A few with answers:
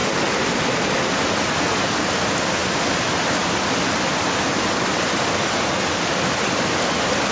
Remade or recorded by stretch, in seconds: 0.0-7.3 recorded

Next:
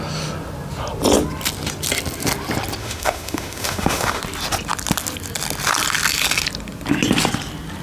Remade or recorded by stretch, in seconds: 0.0-2.8 recorded; 2.8-4.2 remade; 4.2-7.8 recorded

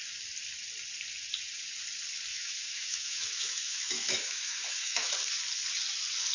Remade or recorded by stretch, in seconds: 0.0-2.3 recorded; 2.3-5.1 remade; 5.1-6.3 recorded

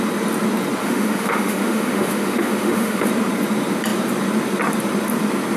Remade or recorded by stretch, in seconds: 0.0-0.8 recorded; 0.8-3.1 remade; 3.1-5.6 recorded

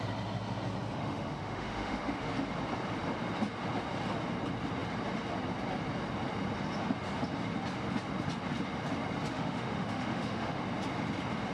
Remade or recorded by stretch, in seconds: 0.0-1.0 recorded; 1.0-2.3 remade; 2.3-9.3 recorded; 9.3-10.6 remade; 10.6-11.5 recorded